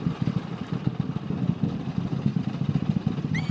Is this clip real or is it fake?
real